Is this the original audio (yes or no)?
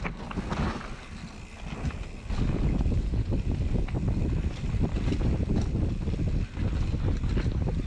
yes